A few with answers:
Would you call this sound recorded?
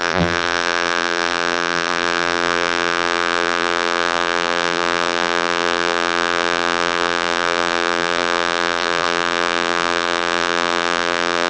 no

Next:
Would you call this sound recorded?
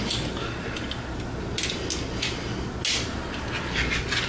yes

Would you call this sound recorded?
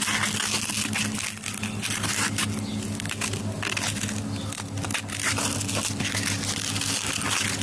yes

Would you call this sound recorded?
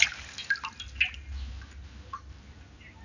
yes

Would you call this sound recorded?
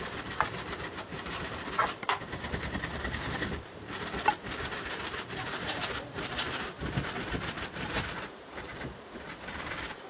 no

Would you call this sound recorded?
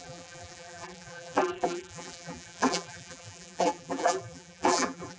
no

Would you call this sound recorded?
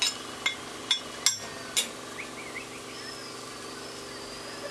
yes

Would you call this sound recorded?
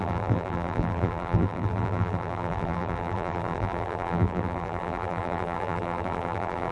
no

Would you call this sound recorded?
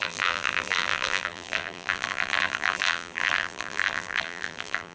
no